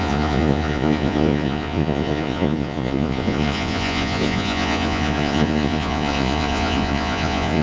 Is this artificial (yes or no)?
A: yes